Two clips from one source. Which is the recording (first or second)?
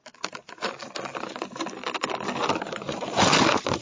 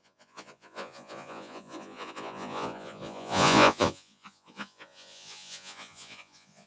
first